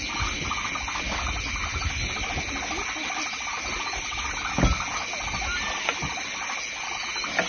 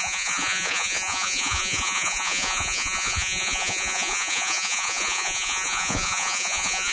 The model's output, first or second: second